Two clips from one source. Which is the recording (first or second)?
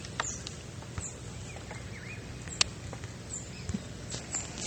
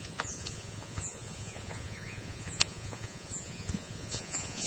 first